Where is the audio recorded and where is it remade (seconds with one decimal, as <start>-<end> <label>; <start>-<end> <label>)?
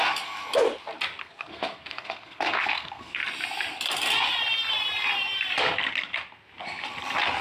0.0-1.2 recorded; 1.2-3.2 remade; 3.2-7.4 recorded